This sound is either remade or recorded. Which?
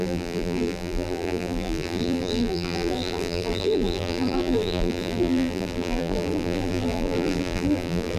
remade